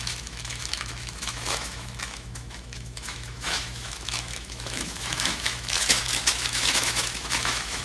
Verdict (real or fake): fake